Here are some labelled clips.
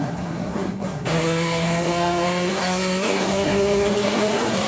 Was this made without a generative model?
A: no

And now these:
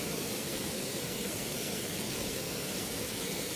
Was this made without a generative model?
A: no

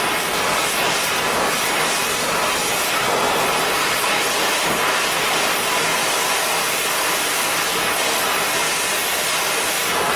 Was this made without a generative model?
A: yes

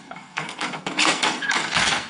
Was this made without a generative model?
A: no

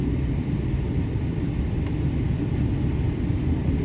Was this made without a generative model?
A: yes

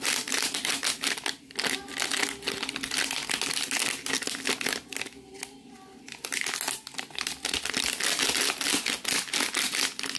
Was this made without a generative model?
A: yes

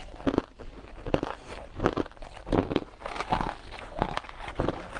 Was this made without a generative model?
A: yes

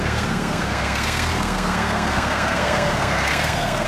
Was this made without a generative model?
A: no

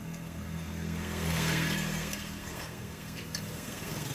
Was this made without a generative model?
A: no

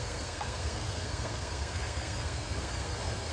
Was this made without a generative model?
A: no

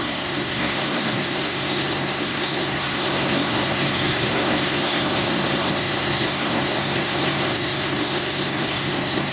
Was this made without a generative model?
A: no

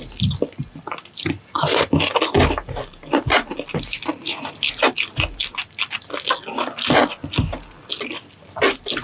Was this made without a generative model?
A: yes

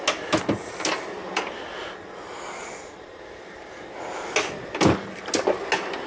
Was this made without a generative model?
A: yes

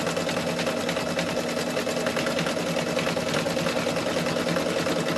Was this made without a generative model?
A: yes